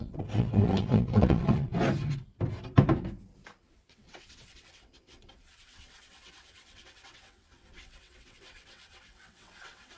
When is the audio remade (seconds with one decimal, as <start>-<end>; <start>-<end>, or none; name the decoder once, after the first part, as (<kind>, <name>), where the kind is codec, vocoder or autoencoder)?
0.0-1.7 (vocoder, WaveNeXt); 3.7-10.0

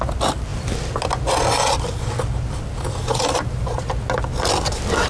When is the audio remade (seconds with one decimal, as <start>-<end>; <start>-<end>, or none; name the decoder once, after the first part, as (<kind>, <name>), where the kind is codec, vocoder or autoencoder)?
3.1-3.9 (vocoder, BigVGAN v2)

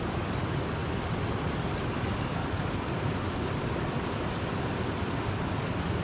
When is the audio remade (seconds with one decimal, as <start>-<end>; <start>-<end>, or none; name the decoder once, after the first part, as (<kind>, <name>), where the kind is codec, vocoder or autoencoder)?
0.0-0.8 (codec, DAC); 1.5-2.4

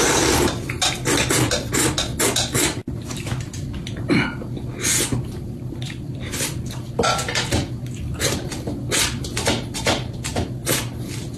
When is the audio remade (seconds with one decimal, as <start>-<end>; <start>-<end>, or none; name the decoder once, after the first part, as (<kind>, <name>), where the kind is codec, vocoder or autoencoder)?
none

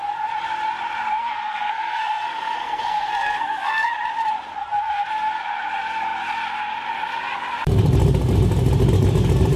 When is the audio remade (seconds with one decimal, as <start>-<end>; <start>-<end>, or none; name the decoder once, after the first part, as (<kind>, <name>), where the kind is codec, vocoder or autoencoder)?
1.1-3.9 (codec, SNAC); 4.6-5.1